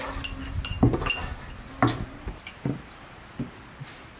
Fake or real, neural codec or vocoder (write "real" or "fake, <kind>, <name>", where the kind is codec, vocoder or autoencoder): real